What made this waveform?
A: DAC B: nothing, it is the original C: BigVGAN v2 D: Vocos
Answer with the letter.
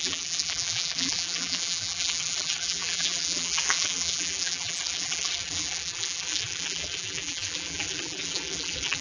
C